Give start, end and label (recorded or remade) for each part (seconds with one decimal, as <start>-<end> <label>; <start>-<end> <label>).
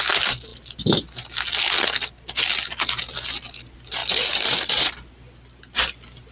0.0-6.3 recorded